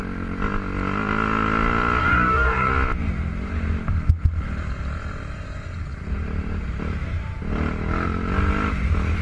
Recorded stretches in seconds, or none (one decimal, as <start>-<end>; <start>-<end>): 0.0-2.0; 2.7-9.2